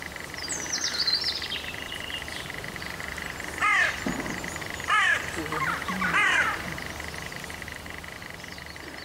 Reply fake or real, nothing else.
real